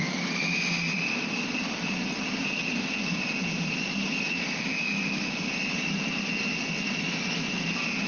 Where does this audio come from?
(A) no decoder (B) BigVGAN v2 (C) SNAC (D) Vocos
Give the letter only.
A